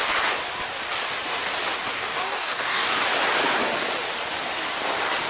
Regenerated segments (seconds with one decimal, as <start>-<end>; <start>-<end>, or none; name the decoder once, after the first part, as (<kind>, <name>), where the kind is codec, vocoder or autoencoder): 1.9-3.0 (codec, DAC)